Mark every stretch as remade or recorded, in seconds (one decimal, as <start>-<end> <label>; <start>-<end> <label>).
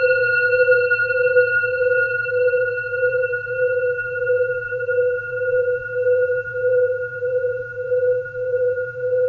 0.0-9.3 remade